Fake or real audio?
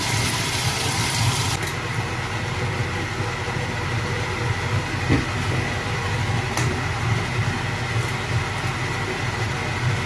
real